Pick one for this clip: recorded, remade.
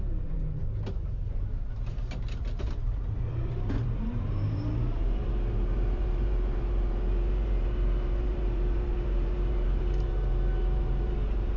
remade